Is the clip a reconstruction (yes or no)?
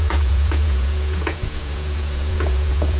yes